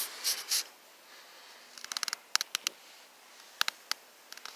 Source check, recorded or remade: recorded